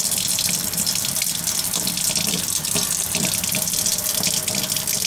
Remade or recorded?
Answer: remade